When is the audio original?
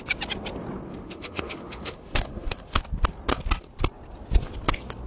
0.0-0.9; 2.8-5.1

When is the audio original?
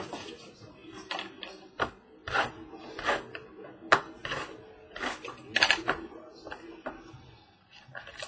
0.0-8.3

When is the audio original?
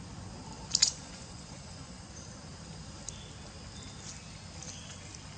0.0-0.8; 2.1-5.4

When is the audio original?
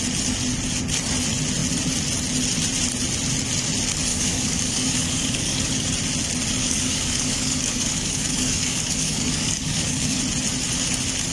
0.0-4.1; 5.9-6.6; 10.2-11.3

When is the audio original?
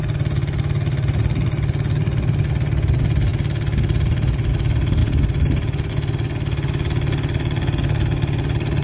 0.0-8.8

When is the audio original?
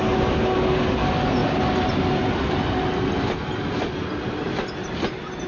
0.0-5.5